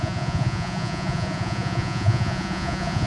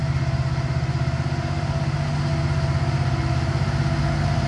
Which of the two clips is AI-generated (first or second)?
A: first